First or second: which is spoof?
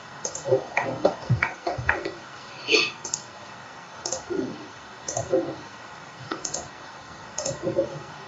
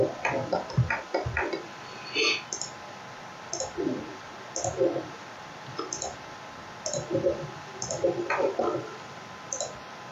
first